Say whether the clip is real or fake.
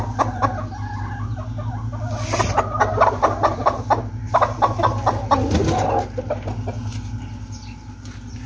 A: real